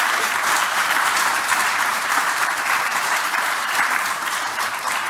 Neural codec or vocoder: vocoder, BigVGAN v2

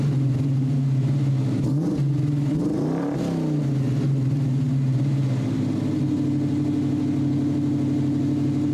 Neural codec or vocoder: none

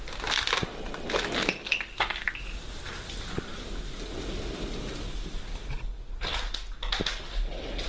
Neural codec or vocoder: none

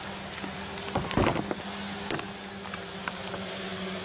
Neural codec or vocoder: none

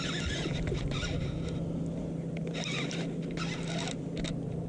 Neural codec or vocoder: none